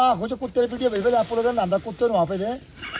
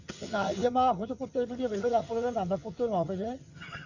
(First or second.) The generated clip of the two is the second